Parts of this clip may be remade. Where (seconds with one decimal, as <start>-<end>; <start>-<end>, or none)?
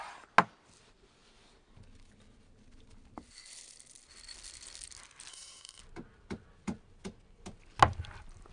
5.3-5.8